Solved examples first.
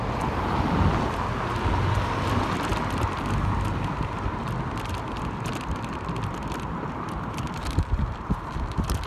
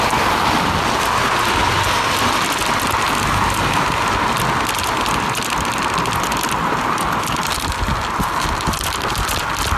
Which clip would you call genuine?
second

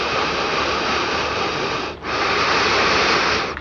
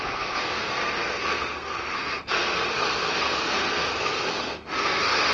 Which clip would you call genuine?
first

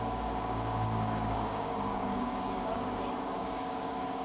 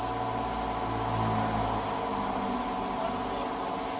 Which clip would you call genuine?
second